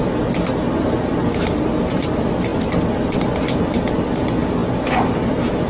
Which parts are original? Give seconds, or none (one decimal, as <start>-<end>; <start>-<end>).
0.0-5.7